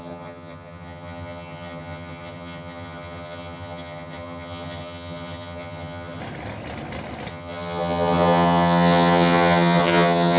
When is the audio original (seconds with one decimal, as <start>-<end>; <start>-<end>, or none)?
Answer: 6.2-7.3